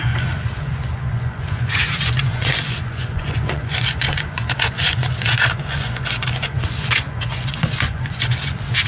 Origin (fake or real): fake